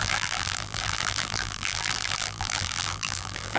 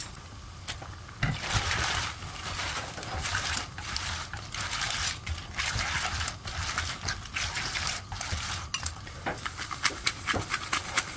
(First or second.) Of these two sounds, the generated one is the first